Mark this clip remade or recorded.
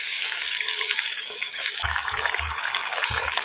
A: remade